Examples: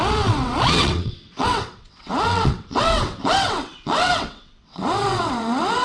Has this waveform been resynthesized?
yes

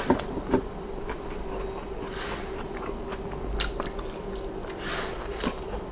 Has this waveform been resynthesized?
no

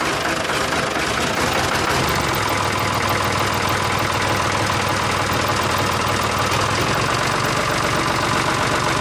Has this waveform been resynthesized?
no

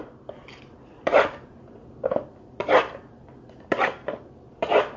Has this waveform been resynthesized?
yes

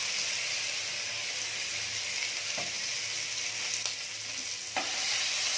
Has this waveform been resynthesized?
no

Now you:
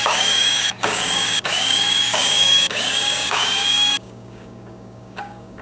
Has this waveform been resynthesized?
yes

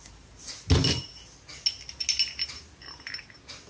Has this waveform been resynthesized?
no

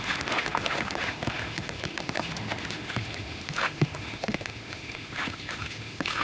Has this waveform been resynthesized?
yes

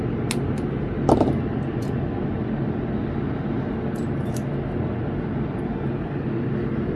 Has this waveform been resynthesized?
no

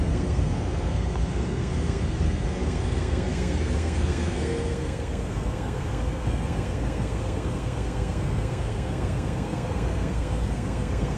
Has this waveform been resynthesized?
yes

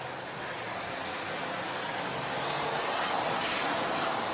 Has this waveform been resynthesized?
no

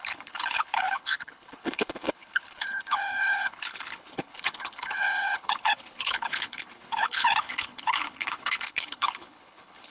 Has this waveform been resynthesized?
yes